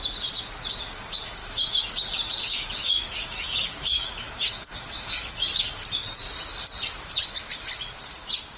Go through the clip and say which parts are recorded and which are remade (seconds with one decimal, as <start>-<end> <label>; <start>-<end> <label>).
0.0-1.4 recorded; 1.4-1.9 remade; 1.9-2.4 recorded; 2.4-5.1 remade; 5.1-8.6 recorded